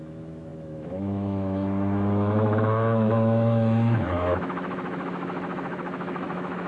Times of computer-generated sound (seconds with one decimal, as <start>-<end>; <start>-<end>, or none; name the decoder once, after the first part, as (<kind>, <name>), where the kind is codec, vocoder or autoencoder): 0.0-6.7 (autoencoder, DAC-VAE)